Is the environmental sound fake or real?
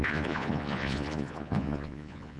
fake